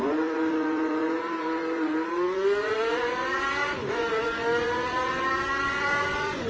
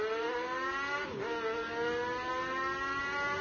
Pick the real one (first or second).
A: second